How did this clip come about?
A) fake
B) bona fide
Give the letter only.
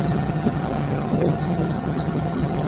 A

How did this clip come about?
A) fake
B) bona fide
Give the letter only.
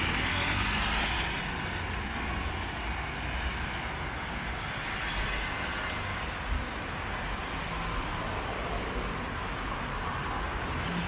B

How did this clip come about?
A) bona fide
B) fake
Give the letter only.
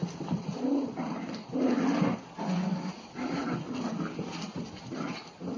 A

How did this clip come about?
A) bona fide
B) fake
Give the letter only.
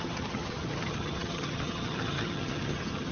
B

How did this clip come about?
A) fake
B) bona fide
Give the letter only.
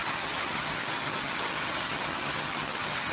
A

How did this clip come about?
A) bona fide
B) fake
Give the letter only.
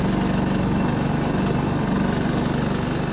A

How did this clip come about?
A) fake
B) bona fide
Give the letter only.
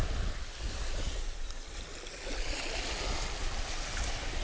B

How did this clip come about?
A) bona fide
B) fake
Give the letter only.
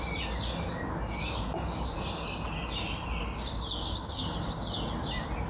A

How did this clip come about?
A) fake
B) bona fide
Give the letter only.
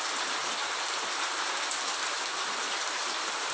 B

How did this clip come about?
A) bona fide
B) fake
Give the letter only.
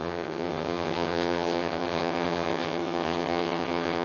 B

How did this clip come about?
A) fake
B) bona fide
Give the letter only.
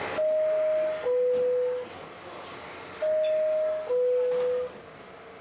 B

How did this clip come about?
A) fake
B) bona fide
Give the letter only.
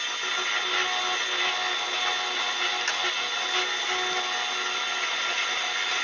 B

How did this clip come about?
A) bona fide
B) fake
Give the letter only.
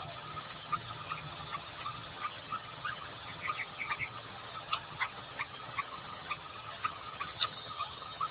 B